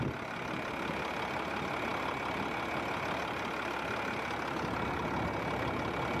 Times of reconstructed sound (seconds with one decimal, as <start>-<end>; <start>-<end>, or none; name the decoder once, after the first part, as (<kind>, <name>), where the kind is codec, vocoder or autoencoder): none